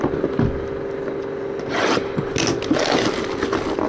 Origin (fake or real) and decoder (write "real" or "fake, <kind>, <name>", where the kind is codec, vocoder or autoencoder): real